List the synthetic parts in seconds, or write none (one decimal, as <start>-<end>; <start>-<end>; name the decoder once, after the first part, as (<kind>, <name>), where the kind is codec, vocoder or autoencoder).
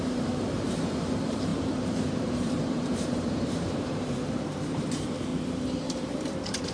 0.0-5.3 (vocoder, BigVGAN v2); 5.9-6.7